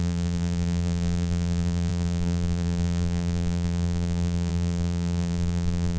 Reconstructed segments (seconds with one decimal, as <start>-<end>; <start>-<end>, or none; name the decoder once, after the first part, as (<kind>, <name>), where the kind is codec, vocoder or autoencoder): 0.0-6.0 (vocoder, BigVGAN v2)